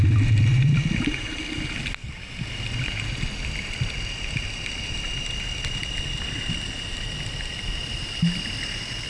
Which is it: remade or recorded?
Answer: recorded